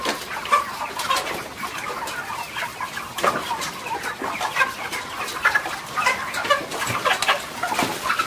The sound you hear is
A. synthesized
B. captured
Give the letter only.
B